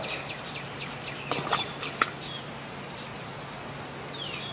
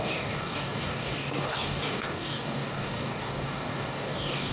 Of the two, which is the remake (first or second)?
second